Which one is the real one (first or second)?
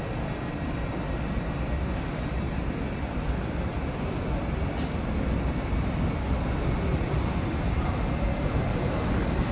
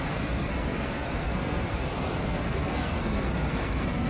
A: first